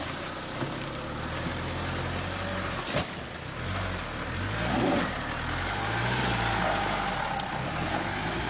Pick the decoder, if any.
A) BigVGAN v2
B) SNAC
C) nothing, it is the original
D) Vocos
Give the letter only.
C